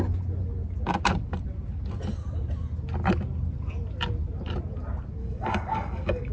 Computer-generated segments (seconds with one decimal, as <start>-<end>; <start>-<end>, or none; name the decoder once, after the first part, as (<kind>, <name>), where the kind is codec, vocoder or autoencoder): 5.2-6.3 (codec, DAC)